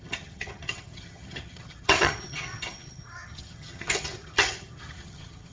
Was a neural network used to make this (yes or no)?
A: yes